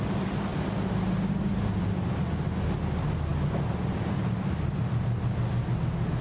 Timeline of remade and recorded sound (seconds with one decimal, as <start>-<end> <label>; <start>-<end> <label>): 0.0-6.2 recorded

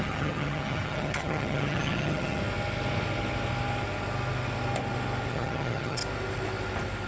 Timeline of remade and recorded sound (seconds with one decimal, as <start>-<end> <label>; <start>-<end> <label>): 0.0-2.4 remade; 2.4-5.3 recorded; 5.3-6.0 remade; 6.0-7.1 recorded